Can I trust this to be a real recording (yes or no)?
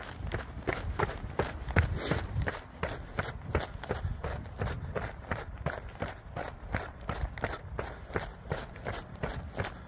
yes